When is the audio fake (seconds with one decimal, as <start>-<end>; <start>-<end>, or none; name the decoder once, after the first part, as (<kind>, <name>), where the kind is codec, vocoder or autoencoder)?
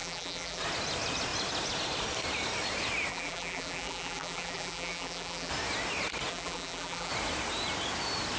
0.0-0.6 (vocoder, BigVGAN v2); 3.1-5.5; 6.3-7.1